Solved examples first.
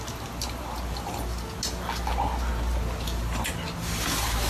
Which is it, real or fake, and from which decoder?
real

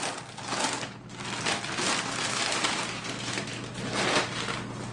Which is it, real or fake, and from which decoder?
real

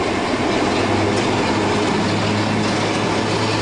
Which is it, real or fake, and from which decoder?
real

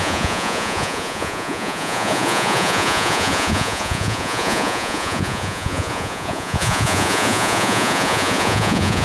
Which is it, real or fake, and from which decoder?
fake, vocoder, Vocos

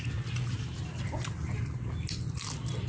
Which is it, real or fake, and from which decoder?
real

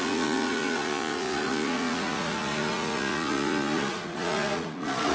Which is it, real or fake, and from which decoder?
fake, vocoder, Vocos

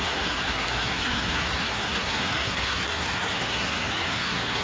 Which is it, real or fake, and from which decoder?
fake, codec, SNAC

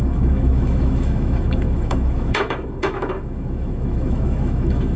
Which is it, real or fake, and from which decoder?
fake, autoencoder, DAC-VAE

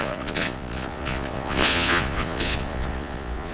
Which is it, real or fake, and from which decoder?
fake, vocoder, Vocos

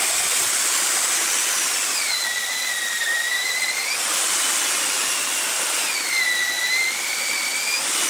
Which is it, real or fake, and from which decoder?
real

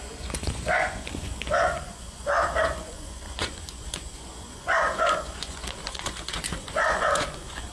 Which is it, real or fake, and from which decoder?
fake, vocoder, Vocos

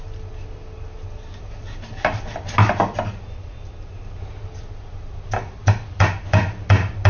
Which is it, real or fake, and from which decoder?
real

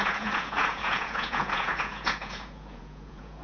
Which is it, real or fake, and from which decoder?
fake, vocoder, Vocos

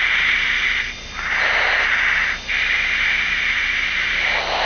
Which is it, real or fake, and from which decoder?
real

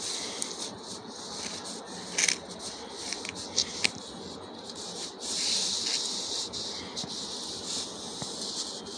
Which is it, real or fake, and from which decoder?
real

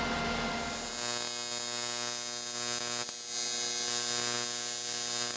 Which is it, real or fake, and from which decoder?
real